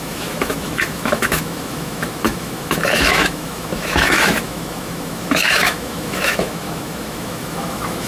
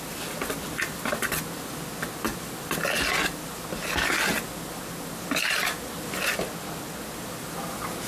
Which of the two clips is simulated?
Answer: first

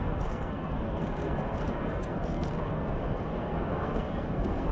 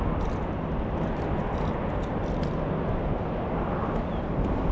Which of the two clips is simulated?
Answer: first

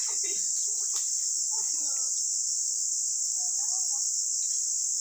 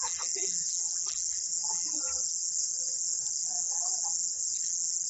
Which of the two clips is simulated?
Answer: second